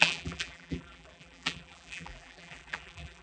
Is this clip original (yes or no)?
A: no